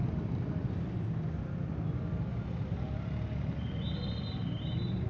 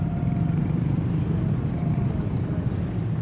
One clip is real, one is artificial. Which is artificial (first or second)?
second